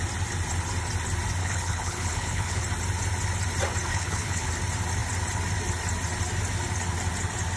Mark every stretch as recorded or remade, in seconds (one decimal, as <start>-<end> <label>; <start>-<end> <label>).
0.0-1.4 recorded; 1.4-2.6 remade; 2.6-3.9 recorded; 3.9-4.5 remade; 4.5-7.6 recorded